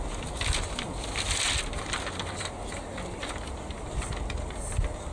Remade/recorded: recorded